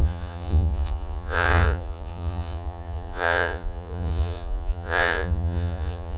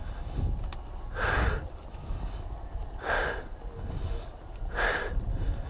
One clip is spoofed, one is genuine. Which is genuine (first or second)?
second